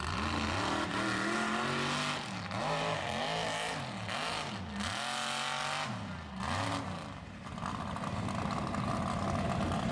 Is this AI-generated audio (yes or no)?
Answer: no